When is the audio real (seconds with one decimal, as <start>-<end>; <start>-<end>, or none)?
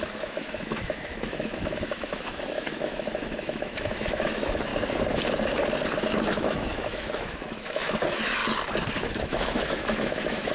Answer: 4.7-6.1; 8.4-9.0